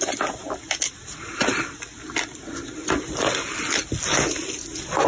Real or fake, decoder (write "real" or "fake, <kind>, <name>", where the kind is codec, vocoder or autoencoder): real